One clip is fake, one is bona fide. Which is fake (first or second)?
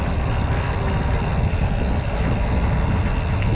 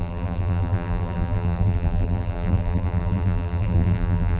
second